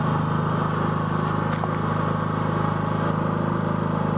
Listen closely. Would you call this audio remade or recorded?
recorded